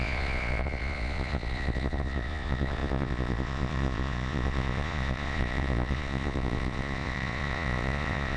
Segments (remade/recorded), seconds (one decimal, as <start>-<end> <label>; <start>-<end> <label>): 0.0-8.4 remade